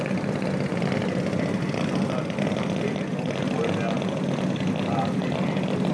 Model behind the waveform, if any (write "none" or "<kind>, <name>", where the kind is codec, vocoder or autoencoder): none